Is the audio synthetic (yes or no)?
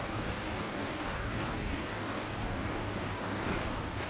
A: yes